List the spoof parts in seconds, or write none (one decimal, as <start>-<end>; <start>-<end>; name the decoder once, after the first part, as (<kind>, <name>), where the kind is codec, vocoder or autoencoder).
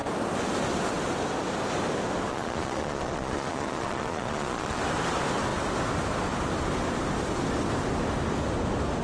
2.3-4.8 (vocoder, Vocos)